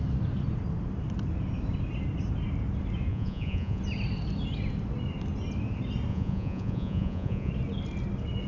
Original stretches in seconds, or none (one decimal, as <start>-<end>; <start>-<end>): 0.0-3.1; 3.8-6.1; 7.5-8.5